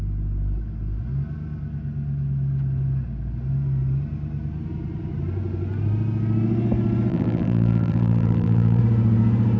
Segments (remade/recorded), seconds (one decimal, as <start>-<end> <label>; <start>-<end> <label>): 0.0-7.1 recorded; 7.1-8.8 remade; 8.8-9.6 recorded